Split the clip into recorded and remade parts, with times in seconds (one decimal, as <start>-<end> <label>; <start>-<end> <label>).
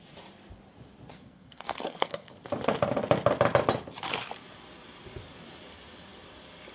0.0-1.1 recorded; 1.1-2.3 remade; 2.3-6.7 recorded